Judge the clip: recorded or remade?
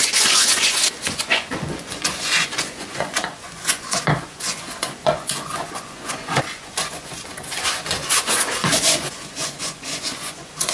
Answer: remade